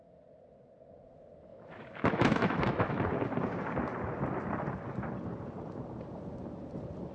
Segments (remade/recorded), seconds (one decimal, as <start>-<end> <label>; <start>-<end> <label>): 0.0-1.5 recorded; 1.5-3.0 remade; 3.0-7.1 recorded